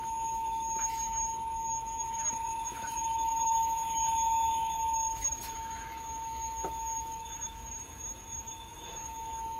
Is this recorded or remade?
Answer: remade